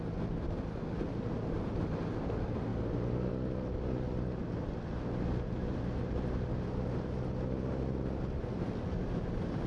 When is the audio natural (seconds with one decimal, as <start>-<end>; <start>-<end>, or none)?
0.0-9.7